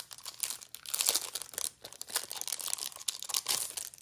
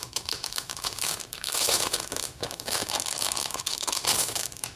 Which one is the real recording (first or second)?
first